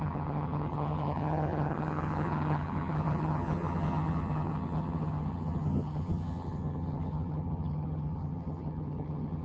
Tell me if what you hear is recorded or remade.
remade